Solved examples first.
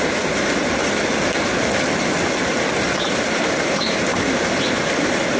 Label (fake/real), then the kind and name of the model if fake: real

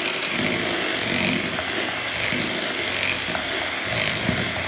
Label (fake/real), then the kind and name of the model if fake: real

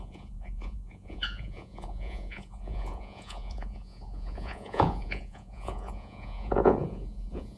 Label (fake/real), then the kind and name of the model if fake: fake, vocoder, Vocos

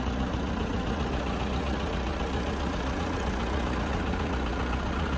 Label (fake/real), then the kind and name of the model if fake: fake, vocoder, Vocos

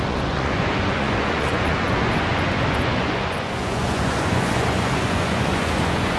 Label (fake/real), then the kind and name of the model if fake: fake, vocoder, Vocos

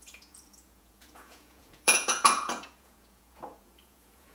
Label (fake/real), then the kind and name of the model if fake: fake, vocoder, Vocos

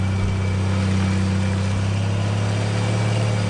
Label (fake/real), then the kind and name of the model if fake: real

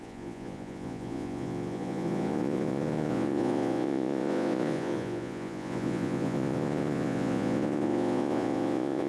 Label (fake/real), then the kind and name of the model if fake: fake, vocoder, Vocos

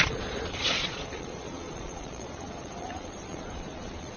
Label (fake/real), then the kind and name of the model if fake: fake, vocoder, Vocos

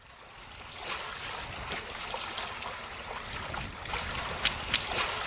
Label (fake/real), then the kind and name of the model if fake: real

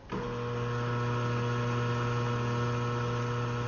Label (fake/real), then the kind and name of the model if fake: real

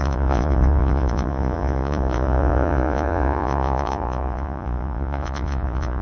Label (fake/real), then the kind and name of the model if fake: fake, vocoder, Vocos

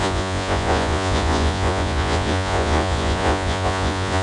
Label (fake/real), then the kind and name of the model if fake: fake, vocoder, Vocos